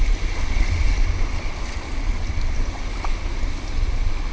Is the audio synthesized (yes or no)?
no